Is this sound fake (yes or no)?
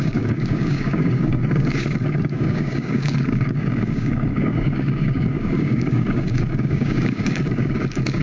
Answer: yes